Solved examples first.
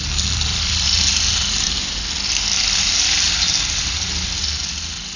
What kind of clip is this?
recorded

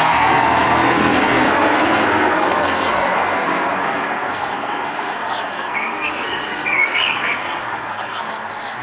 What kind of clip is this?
remade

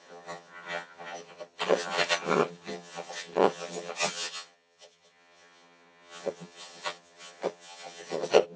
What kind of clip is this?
remade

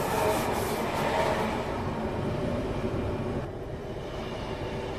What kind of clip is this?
recorded